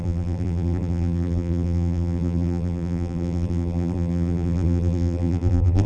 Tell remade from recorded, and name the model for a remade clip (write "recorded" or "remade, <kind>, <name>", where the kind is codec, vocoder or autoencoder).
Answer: remade, vocoder, BigVGAN v2